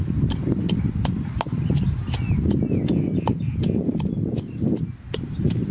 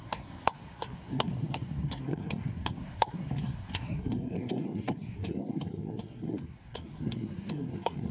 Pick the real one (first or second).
first